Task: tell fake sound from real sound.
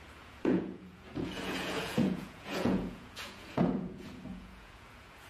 fake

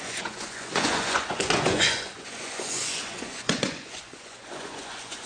fake